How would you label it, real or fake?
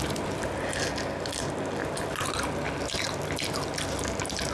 real